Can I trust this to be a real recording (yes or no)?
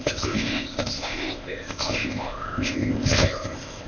no